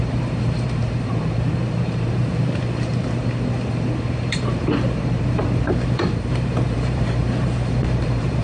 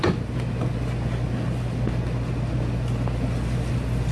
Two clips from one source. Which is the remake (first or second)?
first